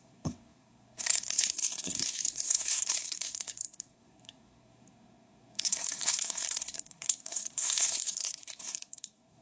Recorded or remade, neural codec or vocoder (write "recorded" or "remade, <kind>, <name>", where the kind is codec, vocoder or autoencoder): remade, codec, SNAC